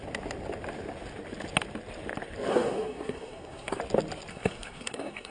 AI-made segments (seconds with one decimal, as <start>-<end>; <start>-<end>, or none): 2.5-3.8; 4.3-5.3